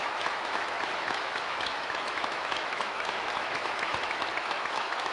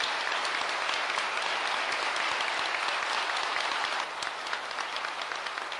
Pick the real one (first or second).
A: second